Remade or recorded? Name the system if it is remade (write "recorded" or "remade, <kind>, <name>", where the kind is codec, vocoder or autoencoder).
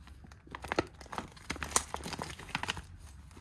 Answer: recorded